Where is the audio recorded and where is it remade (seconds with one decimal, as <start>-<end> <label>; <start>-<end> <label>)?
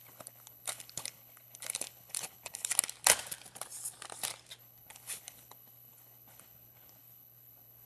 0.0-2.7 remade; 2.7-4.6 recorded; 4.6-7.9 remade